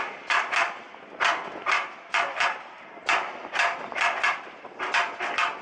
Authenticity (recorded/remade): remade